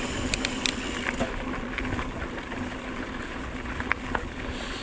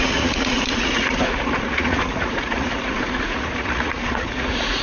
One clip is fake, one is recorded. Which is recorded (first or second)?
first